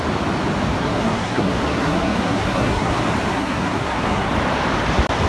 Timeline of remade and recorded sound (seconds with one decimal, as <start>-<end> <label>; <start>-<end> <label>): 0.0-0.8 recorded; 0.8-2.9 remade; 2.9-3.3 recorded; 3.3-4.3 remade; 4.3-5.3 recorded